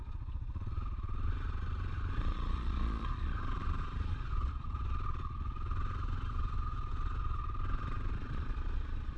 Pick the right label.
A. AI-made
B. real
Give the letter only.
A